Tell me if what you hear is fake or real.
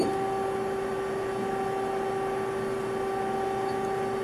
real